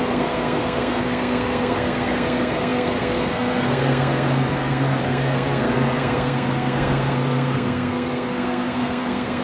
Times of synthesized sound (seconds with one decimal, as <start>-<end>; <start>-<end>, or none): 0.0-9.4